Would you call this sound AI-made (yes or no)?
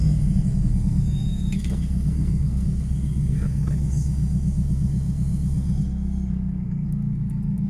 yes